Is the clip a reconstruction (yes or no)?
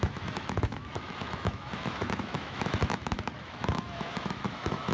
yes